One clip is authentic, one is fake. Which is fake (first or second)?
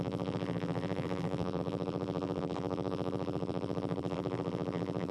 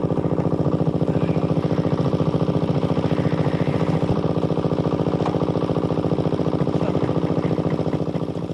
first